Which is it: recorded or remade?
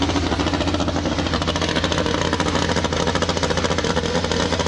recorded